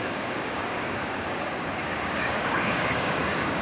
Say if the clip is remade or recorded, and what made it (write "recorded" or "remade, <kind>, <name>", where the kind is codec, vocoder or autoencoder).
remade, codec, DAC